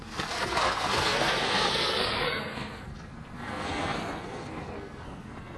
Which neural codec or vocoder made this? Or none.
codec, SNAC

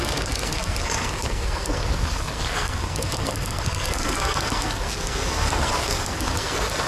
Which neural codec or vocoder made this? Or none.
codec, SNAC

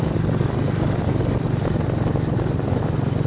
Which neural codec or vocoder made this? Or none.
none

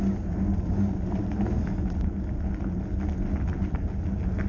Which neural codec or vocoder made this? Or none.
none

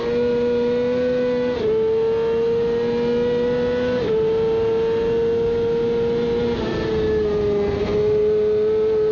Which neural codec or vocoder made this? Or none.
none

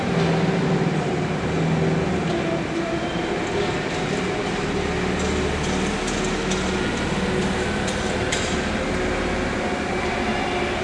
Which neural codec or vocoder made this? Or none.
none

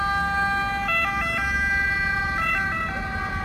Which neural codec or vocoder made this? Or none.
none